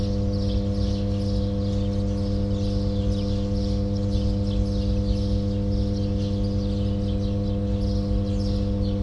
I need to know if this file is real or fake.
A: real